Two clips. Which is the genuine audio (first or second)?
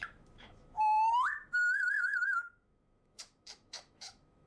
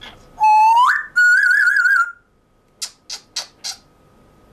second